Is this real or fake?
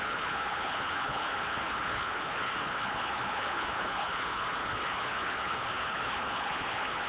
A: fake